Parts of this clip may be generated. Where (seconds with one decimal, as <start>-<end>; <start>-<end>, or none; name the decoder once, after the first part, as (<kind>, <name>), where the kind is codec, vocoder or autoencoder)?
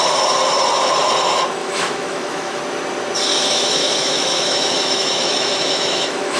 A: 1.6-2.6 (autoencoder, DAC-VAE); 3.3-6.4